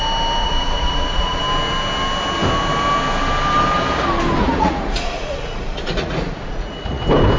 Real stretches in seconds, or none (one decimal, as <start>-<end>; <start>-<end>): 0.0-0.4; 1.4-4.4; 7.0-7.4